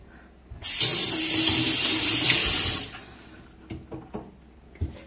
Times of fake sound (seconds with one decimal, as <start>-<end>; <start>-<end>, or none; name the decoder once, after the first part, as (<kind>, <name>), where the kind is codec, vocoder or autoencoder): none